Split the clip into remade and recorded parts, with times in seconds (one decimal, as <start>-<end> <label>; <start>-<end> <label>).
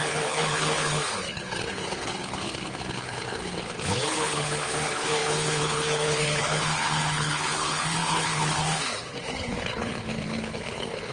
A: 0.0-11.1 remade